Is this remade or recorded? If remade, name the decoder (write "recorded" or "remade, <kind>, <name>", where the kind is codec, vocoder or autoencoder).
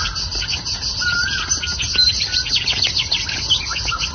recorded